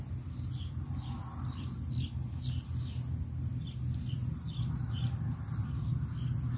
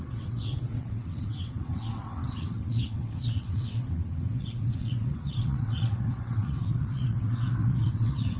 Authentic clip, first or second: first